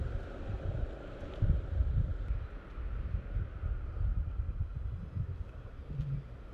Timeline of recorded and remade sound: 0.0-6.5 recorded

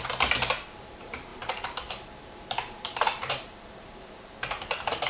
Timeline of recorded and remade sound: 0.0-5.1 remade

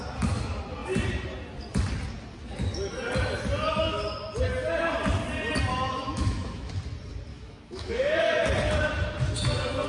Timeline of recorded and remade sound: 0.0-5.7 recorded; 5.7-6.7 remade; 6.7-7.3 recorded; 7.3-8.2 remade; 8.2-9.9 recorded

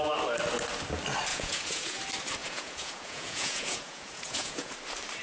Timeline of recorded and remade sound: 0.0-1.3 recorded; 1.3-2.0 remade; 2.0-2.4 recorded; 2.4-4.7 remade; 4.7-5.2 recorded

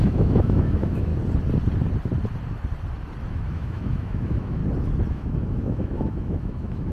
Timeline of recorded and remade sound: 0.0-1.1 remade; 1.1-3.3 recorded; 3.3-4.6 remade; 4.6-5.1 recorded; 5.1-6.9 remade

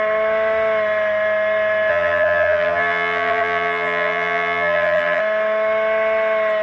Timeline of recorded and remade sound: 0.0-1.9 recorded; 1.9-5.2 remade; 5.2-6.6 recorded

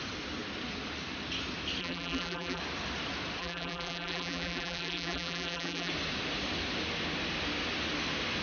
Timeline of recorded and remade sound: 0.0-1.8 recorded; 1.8-2.6 remade; 2.6-3.4 recorded; 3.4-5.9 remade; 5.9-8.4 recorded